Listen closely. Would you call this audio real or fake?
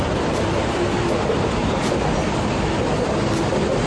real